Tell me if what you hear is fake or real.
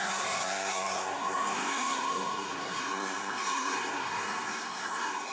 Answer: fake